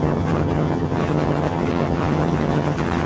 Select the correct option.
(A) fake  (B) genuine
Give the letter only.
A